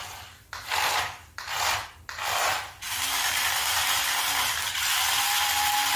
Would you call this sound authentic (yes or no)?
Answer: no